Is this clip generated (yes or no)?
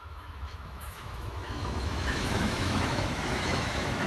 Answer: yes